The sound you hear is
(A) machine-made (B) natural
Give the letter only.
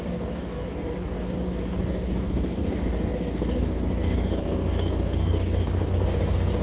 A